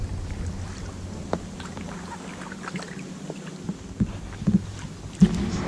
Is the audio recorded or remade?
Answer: recorded